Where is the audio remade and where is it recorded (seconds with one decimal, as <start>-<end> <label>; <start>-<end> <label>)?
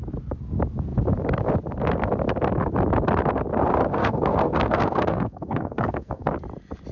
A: 0.0-3.9 recorded; 3.9-6.3 remade; 6.3-6.9 recorded